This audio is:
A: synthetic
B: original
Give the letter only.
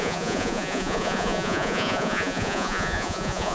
A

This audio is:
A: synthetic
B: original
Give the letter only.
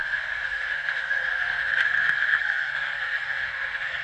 A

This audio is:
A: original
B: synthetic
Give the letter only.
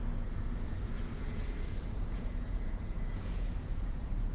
B